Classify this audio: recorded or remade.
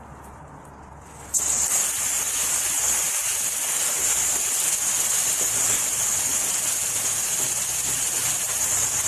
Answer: recorded